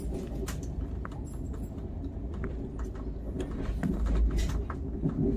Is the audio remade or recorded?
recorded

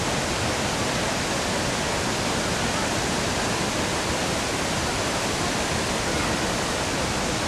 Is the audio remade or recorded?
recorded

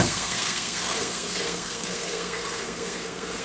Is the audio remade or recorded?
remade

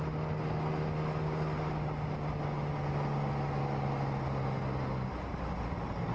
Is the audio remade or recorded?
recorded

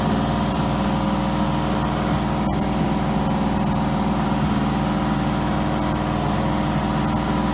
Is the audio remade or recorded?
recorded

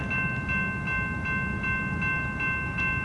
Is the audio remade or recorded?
recorded